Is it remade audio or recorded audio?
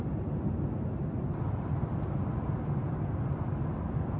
recorded